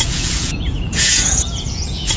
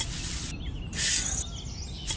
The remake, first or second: first